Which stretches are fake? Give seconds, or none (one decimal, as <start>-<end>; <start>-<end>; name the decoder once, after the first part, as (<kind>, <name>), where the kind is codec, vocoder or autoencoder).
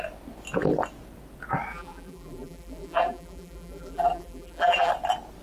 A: 1.7-4.9 (vocoder, BigVGAN v2)